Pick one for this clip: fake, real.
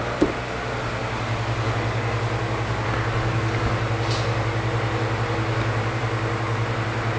real